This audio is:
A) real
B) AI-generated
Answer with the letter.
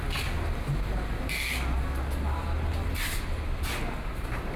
A